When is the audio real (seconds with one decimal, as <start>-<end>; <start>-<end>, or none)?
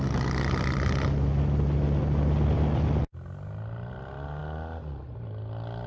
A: 0.0-5.9